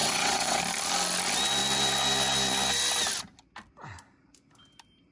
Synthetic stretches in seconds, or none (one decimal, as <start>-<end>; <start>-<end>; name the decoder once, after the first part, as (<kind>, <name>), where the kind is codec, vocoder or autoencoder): 0.0-0.6 (vocoder, WaveNeXt)